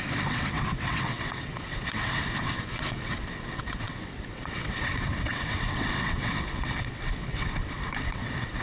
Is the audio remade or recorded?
remade